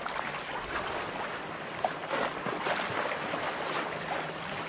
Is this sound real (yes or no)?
yes